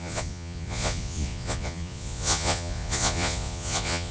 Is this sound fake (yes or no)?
yes